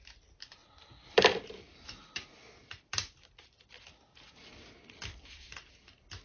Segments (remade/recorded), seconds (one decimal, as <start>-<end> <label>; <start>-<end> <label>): 0.0-0.6 recorded; 0.6-3.7 remade; 3.7-6.2 recorded